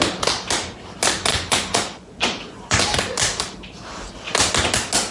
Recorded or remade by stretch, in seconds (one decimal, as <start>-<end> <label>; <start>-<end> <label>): 0.0-1.3 recorded; 1.3-2.8 remade; 2.8-5.1 recorded